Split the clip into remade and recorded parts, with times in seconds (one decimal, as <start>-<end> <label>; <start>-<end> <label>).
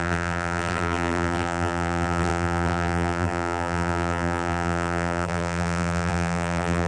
0.0-6.9 remade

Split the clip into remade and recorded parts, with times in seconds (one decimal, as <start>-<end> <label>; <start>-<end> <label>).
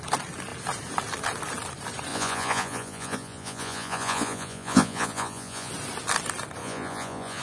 0.0-2.1 recorded; 2.1-5.7 remade; 5.7-6.6 recorded; 6.6-7.4 remade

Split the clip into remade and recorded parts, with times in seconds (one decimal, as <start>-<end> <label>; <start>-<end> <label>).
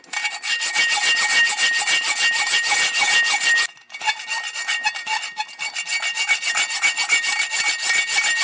0.0-8.4 recorded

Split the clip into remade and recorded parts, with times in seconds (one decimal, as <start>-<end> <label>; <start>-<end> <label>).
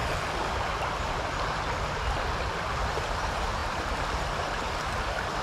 0.0-5.4 recorded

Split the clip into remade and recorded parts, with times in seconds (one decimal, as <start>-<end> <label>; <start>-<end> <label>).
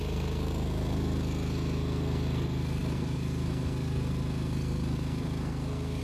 0.0-6.0 remade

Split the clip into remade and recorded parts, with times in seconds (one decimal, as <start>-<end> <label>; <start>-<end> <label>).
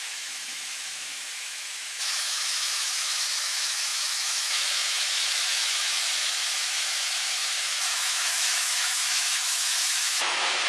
0.0-10.7 remade